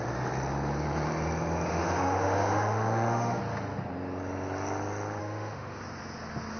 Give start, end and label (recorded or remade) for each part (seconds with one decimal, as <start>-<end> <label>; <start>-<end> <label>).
0.0-1.7 recorded; 1.7-3.4 remade; 3.4-5.2 recorded; 5.2-5.8 remade; 5.8-6.6 recorded